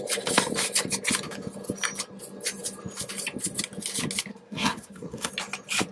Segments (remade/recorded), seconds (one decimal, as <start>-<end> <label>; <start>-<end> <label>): 0.0-4.3 recorded; 4.3-5.3 remade; 5.3-5.9 recorded